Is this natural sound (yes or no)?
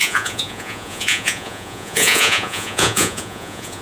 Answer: no